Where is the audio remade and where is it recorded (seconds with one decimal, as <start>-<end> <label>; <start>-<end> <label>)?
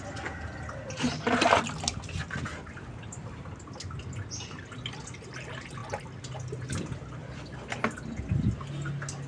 0.0-9.3 recorded